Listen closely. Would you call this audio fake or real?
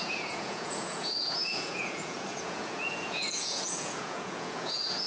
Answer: fake